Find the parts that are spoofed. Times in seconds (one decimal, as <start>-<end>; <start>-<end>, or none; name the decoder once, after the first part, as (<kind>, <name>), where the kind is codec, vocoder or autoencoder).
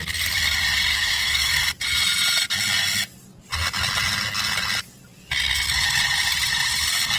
0.9-1.5 (autoencoder, DAC-VAE)